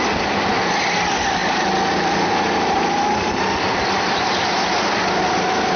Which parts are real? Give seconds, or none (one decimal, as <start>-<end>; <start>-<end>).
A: 0.0-5.8